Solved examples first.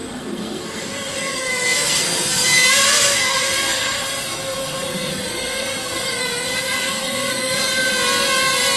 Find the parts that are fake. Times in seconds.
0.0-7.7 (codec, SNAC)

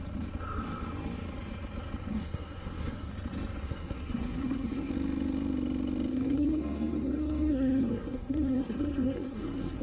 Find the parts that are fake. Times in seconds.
2.1-3.1 (codec, SNAC); 3.6-4.9; 6.1-9.8

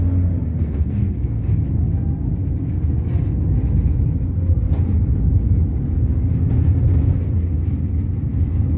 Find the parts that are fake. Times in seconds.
0.6-1.5 (codec, SNAC)

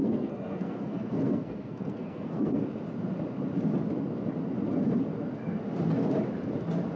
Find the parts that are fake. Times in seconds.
0.0-2.6 (codec, SNAC)

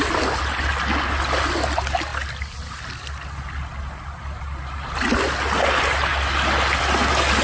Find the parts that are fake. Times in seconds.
none